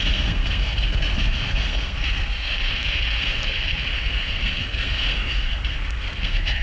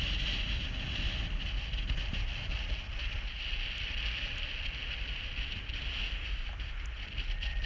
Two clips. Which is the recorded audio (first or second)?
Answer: second